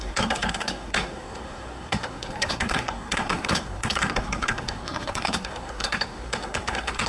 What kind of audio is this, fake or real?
fake